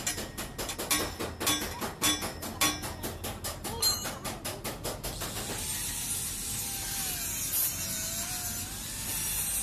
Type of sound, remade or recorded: recorded